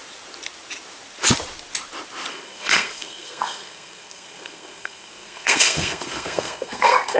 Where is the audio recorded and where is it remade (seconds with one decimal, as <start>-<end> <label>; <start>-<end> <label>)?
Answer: 0.0-2.3 recorded; 2.3-7.2 remade